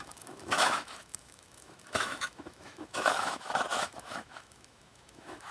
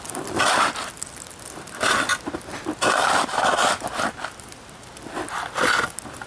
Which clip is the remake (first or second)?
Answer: first